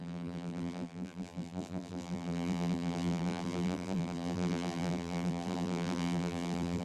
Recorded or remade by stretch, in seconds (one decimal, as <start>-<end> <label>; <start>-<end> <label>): 0.0-6.8 remade